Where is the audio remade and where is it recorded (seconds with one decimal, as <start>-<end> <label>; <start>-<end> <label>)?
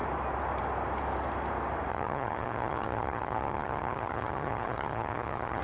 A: 0.0-1.9 recorded; 1.9-5.6 remade